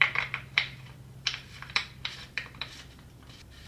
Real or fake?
fake